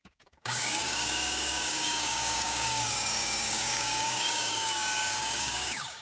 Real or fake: fake